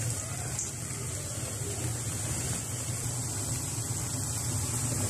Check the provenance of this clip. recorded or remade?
recorded